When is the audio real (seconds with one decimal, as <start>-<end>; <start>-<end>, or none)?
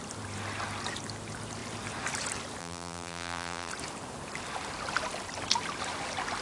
0.0-2.6; 3.7-6.4